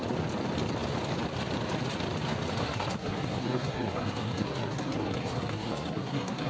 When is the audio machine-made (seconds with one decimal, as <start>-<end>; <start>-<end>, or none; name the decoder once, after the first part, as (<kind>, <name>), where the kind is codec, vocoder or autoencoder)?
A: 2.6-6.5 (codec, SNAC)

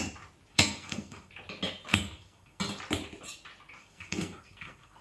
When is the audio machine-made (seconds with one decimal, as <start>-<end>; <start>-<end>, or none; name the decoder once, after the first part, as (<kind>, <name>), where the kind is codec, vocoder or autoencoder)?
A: 0.5-1.3 (codec, SNAC); 1.9-2.6; 3.8-5.0

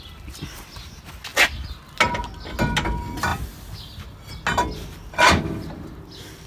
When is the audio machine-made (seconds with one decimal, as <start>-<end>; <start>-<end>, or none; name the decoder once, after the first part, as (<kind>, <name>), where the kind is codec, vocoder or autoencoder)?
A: none

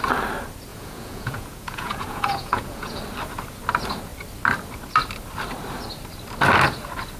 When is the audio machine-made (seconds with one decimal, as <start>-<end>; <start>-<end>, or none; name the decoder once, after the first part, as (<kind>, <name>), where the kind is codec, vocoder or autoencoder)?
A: 0.7-3.0 (vocoder, Vocos)